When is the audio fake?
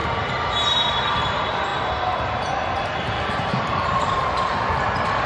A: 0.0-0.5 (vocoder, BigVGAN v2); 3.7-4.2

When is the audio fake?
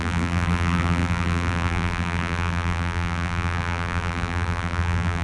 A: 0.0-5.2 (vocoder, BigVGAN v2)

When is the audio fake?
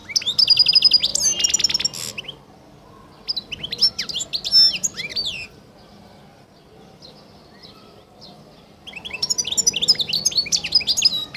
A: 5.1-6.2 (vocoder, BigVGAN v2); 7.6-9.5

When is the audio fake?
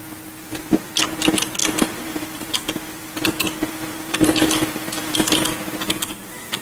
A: 1.6-5.3 (vocoder, BigVGAN v2)